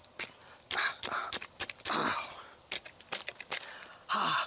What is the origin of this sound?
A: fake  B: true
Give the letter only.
B